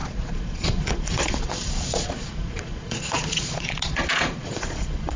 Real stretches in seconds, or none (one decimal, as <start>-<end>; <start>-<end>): none